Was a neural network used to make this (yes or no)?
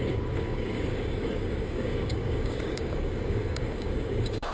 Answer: yes